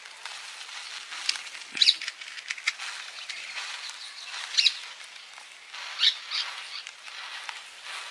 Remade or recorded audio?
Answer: recorded